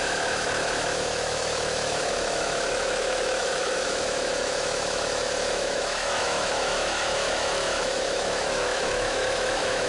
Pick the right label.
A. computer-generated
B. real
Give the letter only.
A